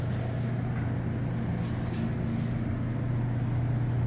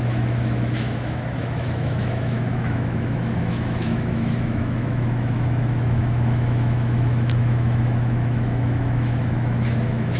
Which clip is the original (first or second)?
first